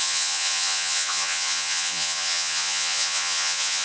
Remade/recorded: remade